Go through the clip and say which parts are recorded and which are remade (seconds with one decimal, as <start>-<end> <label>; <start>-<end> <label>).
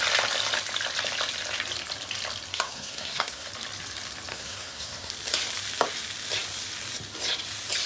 0.0-2.5 recorded; 2.5-3.5 remade; 3.5-4.3 recorded; 4.3-5.1 remade; 5.1-7.9 recorded